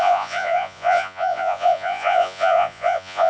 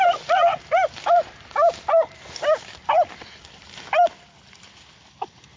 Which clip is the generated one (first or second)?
first